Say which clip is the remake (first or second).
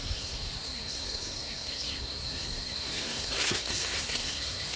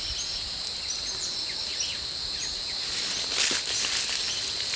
first